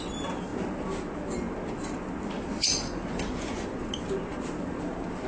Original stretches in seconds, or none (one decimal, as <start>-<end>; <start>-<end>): 0.0-2.6; 3.8-5.3